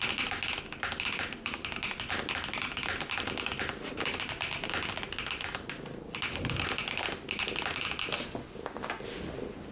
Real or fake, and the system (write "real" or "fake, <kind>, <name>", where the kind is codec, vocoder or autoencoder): real